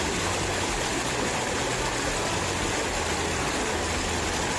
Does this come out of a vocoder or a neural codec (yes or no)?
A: no